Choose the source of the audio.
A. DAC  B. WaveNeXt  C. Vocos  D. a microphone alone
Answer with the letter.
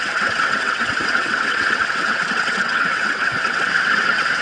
B